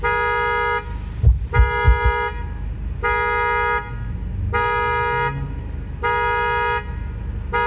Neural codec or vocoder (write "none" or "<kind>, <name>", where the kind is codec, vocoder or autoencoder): none